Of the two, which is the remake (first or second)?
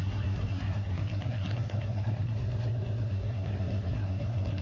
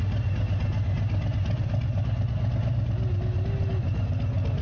first